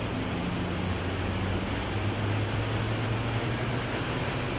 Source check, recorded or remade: recorded